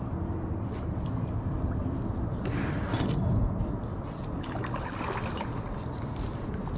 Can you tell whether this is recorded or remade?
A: recorded